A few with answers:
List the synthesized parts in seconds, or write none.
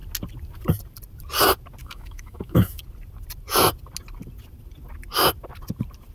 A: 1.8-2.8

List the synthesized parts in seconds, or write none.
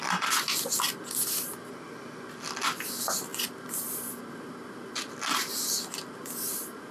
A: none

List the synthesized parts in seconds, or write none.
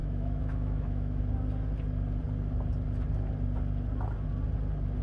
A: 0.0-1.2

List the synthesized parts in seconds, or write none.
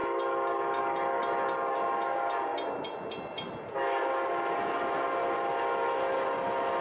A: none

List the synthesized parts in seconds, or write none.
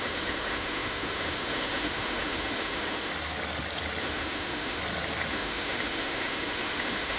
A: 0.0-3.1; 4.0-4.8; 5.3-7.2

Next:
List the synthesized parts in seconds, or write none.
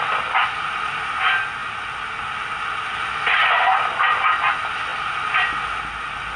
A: none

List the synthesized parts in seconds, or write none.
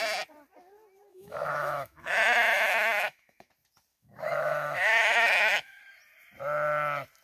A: 1.1-3.5; 3.9-5.8